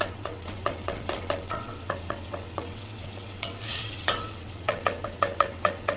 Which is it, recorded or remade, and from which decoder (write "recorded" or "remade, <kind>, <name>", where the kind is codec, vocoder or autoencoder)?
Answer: remade, vocoder, WaveNeXt